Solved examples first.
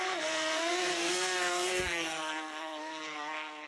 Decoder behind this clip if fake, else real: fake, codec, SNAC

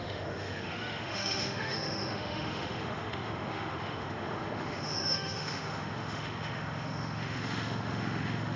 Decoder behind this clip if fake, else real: fake, autoencoder, DAC-VAE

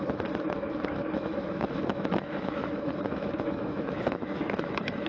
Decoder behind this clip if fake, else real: fake, autoencoder, DAC-VAE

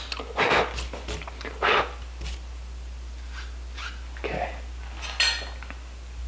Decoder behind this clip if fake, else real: real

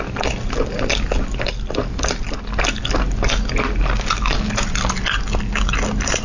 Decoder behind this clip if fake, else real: real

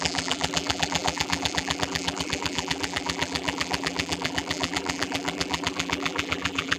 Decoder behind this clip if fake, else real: fake, vocoder, BigVGAN v2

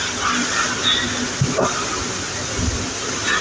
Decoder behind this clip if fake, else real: real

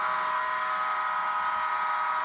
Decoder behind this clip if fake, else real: real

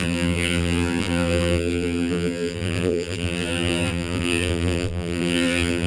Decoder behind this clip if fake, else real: fake, vocoder, BigVGAN v2